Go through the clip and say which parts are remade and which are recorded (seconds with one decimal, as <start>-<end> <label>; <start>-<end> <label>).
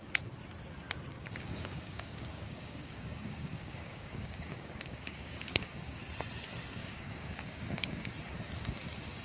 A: 0.0-1.1 recorded; 1.1-6.0 remade; 6.0-6.8 recorded; 6.8-8.1 remade; 8.1-9.2 recorded